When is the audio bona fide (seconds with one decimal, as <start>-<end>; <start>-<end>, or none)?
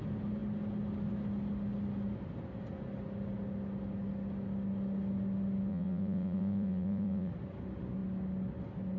0.0-5.7; 7.3-9.0